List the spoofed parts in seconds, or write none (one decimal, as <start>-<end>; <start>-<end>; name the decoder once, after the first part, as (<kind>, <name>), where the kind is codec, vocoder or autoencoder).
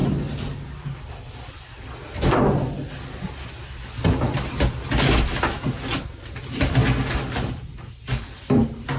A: none